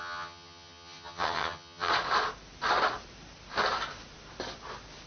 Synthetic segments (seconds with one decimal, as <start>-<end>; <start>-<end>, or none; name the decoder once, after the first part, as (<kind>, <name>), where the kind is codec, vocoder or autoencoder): 0.0-1.9 (vocoder, HiFi-GAN)